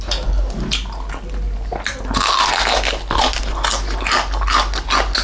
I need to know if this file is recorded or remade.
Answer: recorded